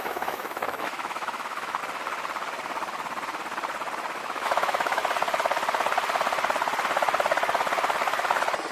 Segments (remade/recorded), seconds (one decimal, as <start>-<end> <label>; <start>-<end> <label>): 0.0-1.8 remade; 1.8-4.2 recorded; 4.2-5.0 remade; 5.0-8.7 recorded